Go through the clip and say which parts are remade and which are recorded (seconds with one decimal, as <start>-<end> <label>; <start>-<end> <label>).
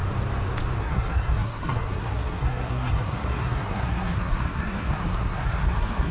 0.0-0.8 recorded; 0.8-6.1 remade